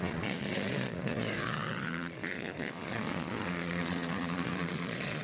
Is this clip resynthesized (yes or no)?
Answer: yes